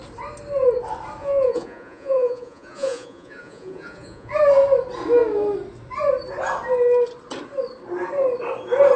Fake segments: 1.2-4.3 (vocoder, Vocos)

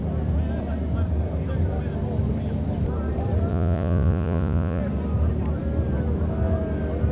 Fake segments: 3.5-4.8 (vocoder, Vocos)

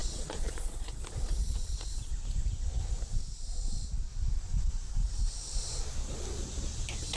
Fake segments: 0.0-2.1 (vocoder, Vocos)

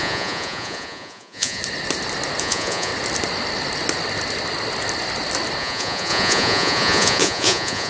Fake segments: 0.0-1.6 (vocoder, Vocos); 2.4-2.9; 5.6-7.9